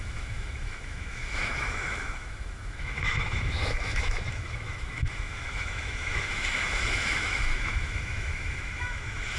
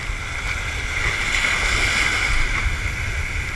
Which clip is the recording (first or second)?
second